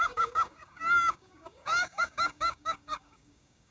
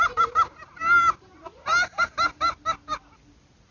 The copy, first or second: first